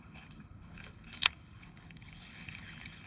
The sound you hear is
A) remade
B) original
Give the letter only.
A